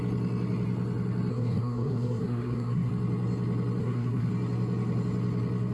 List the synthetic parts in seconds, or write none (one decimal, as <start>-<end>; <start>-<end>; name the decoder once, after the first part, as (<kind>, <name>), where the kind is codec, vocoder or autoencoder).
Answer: 1.3-2.9 (codec, SNAC); 3.8-4.3

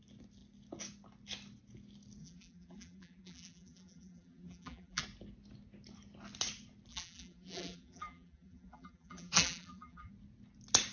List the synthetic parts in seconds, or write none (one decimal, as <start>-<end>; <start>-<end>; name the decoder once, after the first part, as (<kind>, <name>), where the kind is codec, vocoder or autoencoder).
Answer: 2.2-5.0 (vocoder, BigVGAN v2); 6.9-10.1

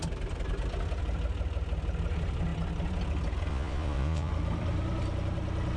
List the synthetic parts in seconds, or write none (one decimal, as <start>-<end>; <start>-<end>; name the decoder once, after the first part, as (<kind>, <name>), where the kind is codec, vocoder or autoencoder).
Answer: 3.5-4.3 (vocoder, Vocos)

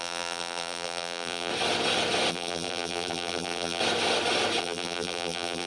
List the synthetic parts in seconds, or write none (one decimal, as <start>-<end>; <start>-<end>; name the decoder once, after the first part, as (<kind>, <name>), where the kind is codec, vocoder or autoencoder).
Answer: 0.0-1.5 (vocoder, BigVGAN v2); 2.3-3.8; 4.6-5.7

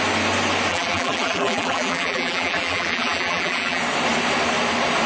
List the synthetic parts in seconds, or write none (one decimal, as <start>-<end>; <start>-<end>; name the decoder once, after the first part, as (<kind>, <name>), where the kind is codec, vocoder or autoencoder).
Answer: 0.7-3.8 (vocoder, BigVGAN v2)

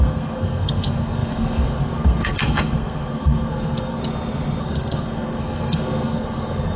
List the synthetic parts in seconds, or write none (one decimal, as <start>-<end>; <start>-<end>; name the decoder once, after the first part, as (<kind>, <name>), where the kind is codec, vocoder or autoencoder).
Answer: 0.0-4.0 (codec, SNAC); 4.6-6.8

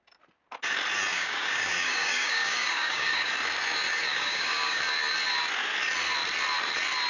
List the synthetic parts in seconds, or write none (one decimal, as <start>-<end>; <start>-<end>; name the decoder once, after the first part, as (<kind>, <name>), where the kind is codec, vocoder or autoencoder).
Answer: 1.1-3.3 (codec, DAC); 4.1-4.8